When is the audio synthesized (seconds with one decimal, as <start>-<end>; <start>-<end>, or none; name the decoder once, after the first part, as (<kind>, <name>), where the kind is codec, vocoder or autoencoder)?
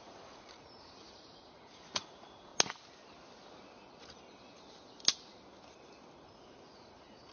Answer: 0.0-2.5 (vocoder, Vocos); 6.2-7.3